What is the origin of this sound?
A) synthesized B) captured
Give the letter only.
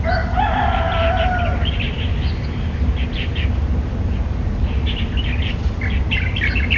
B